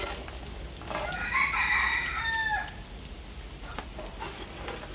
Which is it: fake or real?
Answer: real